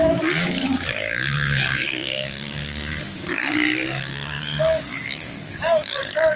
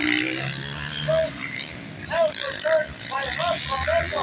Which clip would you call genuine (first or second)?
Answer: second